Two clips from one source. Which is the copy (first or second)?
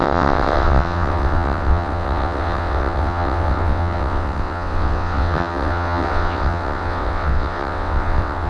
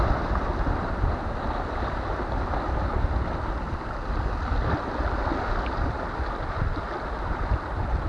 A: first